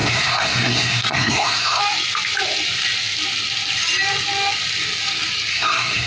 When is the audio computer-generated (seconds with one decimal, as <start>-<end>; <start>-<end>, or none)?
0.0-1.8; 5.5-6.1

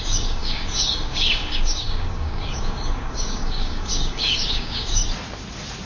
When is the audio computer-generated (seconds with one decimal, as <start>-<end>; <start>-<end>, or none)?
0.0-5.0

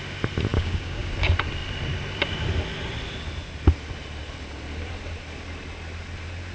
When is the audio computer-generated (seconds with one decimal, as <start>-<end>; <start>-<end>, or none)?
0.5-1.1

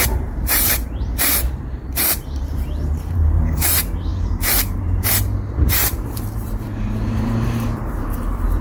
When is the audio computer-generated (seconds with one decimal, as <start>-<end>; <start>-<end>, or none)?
0.0-8.6